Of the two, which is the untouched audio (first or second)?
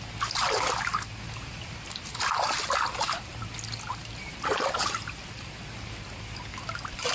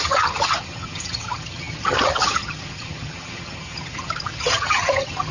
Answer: first